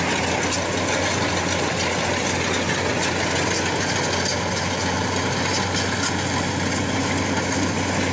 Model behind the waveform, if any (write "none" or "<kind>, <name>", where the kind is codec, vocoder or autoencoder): none